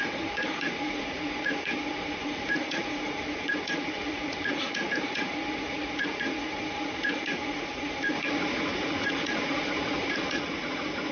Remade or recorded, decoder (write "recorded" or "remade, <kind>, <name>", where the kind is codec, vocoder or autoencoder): remade, vocoder, Vocos